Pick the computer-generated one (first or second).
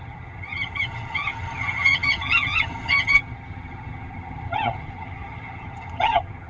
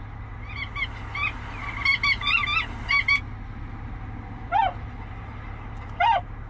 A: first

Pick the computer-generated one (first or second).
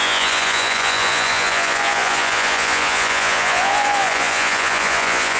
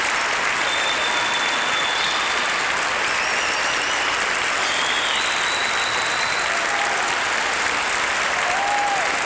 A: first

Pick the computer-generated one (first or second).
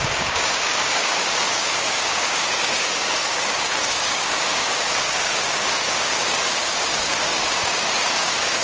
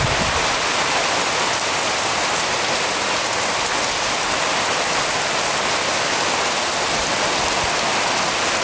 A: first